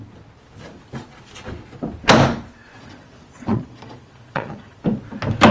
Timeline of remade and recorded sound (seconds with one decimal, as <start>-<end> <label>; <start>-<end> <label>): 0.0-2.7 recorded; 2.7-4.8 remade; 4.8-5.5 recorded